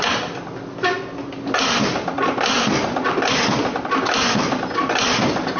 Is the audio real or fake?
real